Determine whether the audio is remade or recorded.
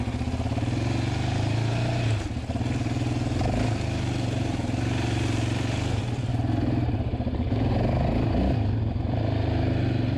recorded